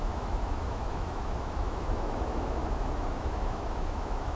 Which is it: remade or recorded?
remade